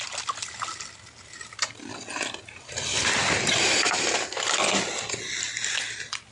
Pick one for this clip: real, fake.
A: real